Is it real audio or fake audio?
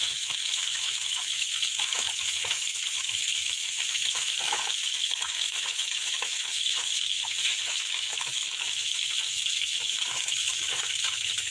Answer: fake